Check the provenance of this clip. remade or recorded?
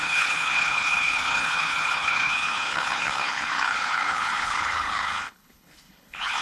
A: remade